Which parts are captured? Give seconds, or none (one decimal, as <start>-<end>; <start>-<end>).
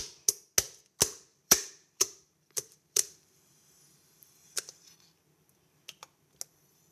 0.0-1.3; 4.1-6.9